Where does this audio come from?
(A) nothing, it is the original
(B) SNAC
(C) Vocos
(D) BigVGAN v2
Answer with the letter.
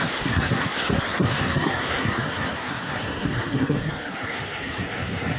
B